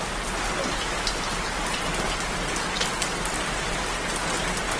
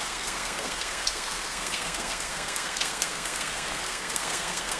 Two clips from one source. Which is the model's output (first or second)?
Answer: second